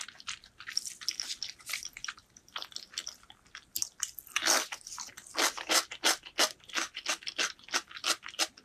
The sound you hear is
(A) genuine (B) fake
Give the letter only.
A